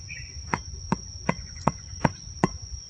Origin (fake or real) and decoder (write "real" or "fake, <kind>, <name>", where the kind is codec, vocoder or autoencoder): fake, vocoder, Vocos